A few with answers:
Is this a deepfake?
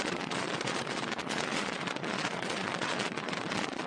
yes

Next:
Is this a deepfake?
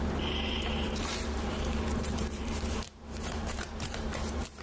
yes